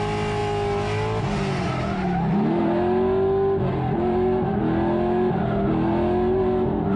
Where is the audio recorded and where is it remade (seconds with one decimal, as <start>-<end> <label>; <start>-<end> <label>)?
0.0-7.0 recorded